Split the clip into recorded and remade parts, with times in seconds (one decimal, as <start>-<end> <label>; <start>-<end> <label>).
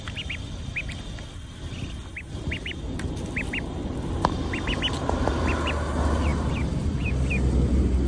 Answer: 0.0-6.3 recorded; 6.3-7.3 remade; 7.3-8.1 recorded